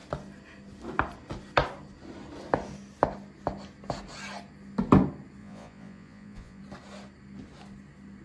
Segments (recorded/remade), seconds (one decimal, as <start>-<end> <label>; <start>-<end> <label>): 0.0-5.4 recorded; 5.4-6.6 remade; 6.6-8.2 recorded

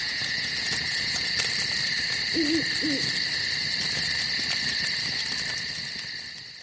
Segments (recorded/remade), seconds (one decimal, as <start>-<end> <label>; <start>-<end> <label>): 0.0-1.4 remade; 1.4-6.6 recorded

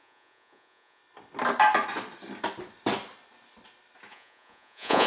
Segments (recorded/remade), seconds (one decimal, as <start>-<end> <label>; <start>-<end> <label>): 0.0-1.0 remade; 1.0-4.1 recorded; 4.1-5.1 remade

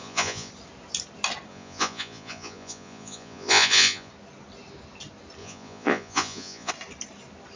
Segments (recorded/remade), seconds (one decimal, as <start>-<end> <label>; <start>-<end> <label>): 0.0-0.5 remade; 0.5-1.5 recorded; 1.5-4.1 remade; 4.1-5.4 recorded; 5.4-6.7 remade; 6.7-7.6 recorded

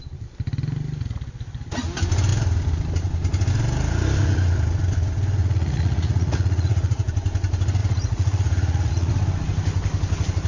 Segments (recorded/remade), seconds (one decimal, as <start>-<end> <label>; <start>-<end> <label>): 0.0-5.4 recorded; 5.4-7.1 remade; 7.1-7.8 recorded; 7.8-9.1 remade; 9.1-10.5 recorded

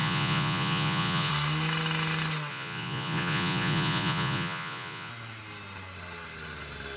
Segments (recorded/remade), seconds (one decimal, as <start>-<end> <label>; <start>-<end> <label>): 0.0-1.3 remade; 1.3-2.5 recorded; 2.5-5.1 remade; 5.1-7.0 recorded

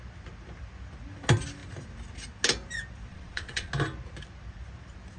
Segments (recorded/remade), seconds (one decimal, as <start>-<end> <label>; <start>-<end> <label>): 0.0-3.1 recorded; 3.1-3.7 remade; 3.7-5.2 recorded

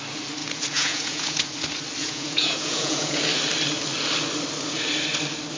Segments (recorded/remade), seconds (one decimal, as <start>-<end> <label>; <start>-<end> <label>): 0.0-0.4 recorded; 0.4-1.5 remade; 1.5-2.0 recorded; 2.0-3.2 remade; 3.2-5.6 recorded